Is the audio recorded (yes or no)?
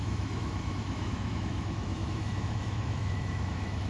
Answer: no